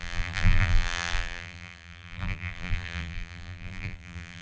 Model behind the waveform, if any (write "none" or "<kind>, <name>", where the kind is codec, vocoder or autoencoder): vocoder, BigVGAN v2